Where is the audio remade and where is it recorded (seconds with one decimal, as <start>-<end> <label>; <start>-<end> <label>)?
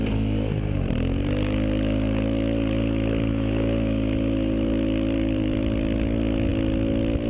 0.0-7.3 recorded